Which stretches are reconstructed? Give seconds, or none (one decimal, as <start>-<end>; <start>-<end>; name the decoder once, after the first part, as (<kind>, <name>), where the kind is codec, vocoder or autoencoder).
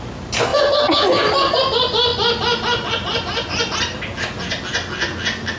none